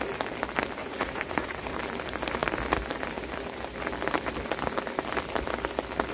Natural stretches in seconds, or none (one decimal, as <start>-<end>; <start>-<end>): 0.0-0.8; 1.8-6.1